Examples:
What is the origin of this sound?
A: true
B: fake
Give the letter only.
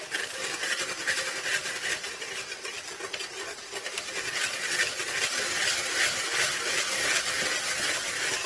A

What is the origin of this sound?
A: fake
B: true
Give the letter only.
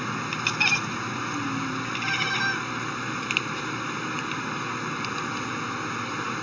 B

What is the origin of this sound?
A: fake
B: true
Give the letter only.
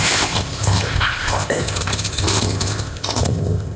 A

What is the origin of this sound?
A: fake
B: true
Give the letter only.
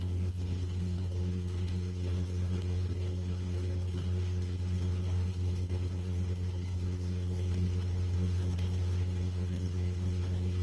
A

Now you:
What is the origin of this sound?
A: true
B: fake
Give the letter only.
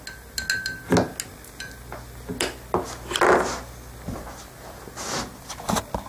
A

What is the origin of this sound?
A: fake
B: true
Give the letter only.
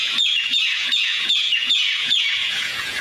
A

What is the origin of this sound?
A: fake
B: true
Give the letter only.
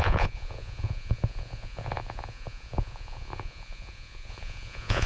A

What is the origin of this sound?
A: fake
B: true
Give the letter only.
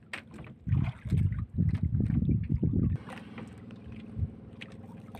B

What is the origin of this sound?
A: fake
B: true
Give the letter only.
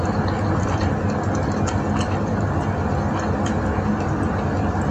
B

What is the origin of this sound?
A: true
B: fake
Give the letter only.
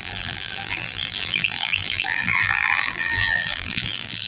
B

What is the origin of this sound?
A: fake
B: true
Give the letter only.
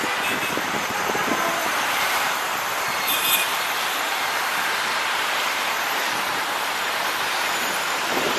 A